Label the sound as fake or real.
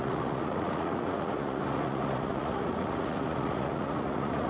fake